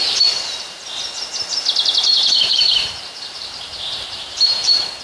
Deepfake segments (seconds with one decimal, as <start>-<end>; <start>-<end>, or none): 2.1-5.0